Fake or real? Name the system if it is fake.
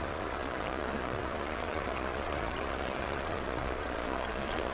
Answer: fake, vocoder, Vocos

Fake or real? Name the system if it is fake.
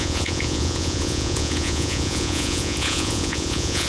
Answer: fake, vocoder, Vocos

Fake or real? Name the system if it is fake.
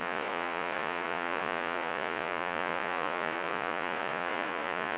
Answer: fake, vocoder, Vocos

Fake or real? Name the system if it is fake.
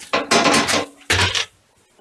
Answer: real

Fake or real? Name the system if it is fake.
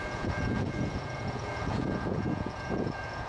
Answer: fake, vocoder, Vocos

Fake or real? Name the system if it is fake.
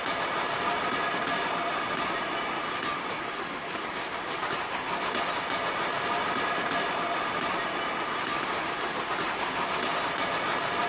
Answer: real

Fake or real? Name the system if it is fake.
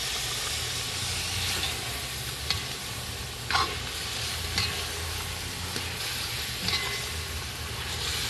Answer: real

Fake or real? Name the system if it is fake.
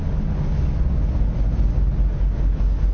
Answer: real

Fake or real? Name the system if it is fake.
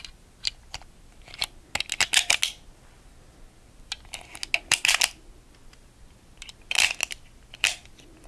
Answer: real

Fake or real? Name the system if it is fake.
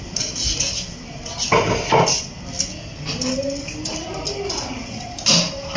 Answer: real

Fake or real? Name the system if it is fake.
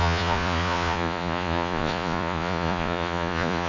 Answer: fake, vocoder, Vocos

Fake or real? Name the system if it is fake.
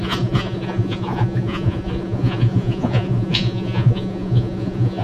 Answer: fake, vocoder, Vocos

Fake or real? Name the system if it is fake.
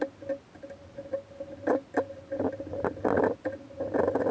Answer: real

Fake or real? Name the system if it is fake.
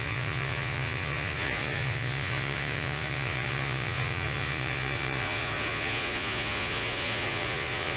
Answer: fake, vocoder, Vocos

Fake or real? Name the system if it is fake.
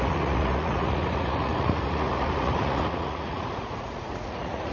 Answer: fake, vocoder, Vocos